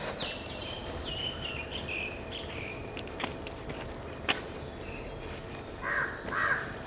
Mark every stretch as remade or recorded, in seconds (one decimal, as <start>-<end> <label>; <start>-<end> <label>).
0.0-6.9 remade